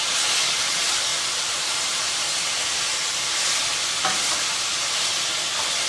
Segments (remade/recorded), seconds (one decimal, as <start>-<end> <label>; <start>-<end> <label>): 0.0-1.1 recorded; 1.1-3.3 remade; 3.3-5.9 recorded